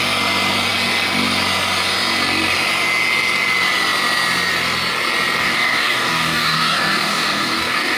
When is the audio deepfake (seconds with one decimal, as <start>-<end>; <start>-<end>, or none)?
5.4-8.0